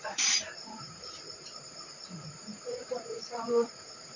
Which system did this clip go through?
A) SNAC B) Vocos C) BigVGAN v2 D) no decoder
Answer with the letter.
B